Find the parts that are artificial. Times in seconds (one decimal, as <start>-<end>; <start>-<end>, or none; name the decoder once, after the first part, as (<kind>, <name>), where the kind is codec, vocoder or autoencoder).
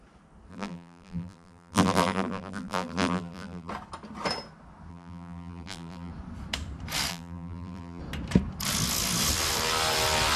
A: 0.5-3.7 (vocoder, BigVGAN v2); 4.9-6.1; 7.1-8.0